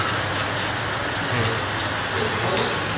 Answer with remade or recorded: recorded